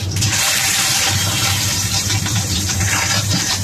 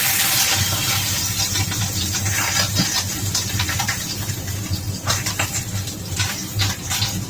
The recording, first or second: second